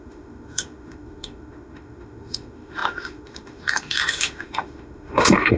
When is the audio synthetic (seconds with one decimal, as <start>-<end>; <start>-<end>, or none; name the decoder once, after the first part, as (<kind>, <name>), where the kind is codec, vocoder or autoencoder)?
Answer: 0.0-5.6 (autoencoder, DAC-VAE)